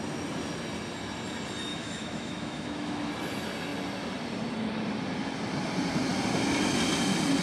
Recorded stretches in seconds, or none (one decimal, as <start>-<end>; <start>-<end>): 0.0-1.7; 3.1-7.4